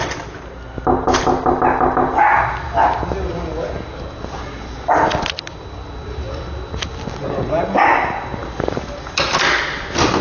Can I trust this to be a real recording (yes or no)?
yes